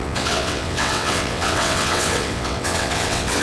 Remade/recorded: remade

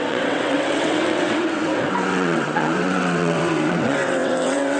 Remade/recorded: remade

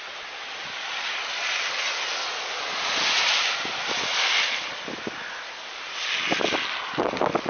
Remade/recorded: recorded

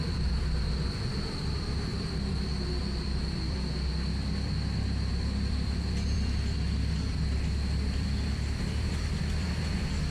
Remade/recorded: remade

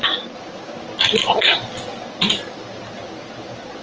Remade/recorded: recorded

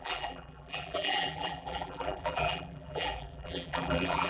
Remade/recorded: remade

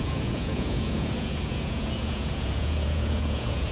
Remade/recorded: remade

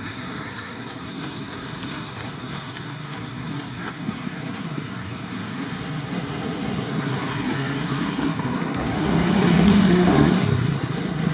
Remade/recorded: remade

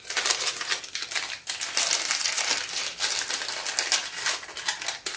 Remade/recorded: recorded